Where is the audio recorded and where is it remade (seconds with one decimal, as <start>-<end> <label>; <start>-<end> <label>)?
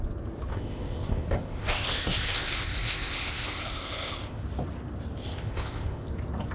0.0-0.5 recorded; 0.5-4.4 remade; 4.4-5.2 recorded; 5.2-6.1 remade; 6.1-6.5 recorded